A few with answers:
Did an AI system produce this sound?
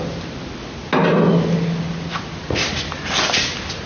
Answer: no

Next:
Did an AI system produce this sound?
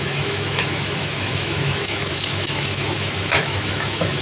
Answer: yes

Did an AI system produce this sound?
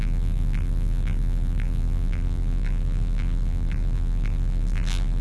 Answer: yes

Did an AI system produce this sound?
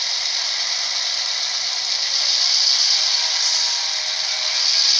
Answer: no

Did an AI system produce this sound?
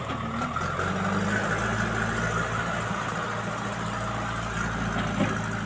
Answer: no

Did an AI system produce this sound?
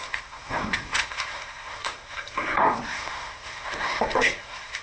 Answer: yes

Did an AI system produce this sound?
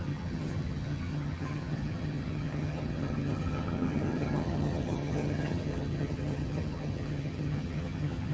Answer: yes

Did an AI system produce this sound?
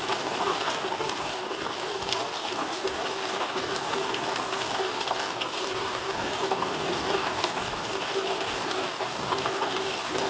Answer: yes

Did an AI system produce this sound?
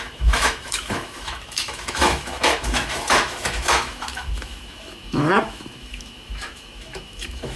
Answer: yes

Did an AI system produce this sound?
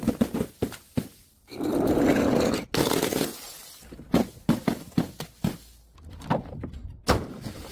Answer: no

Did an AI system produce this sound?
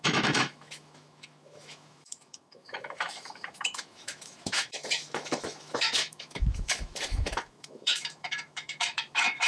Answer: yes